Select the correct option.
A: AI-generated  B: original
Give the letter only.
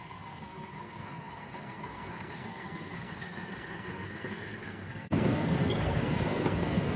A